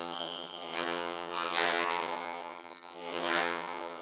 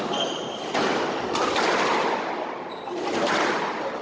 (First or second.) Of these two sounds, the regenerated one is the first